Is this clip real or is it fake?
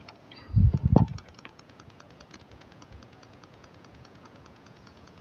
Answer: fake